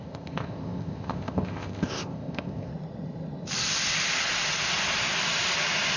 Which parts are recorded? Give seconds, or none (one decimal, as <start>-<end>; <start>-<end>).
2.7-6.0